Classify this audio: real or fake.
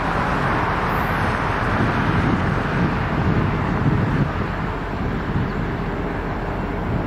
real